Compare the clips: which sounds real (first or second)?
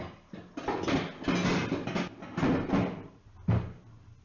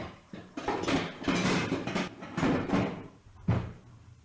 first